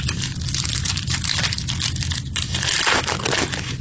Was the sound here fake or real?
real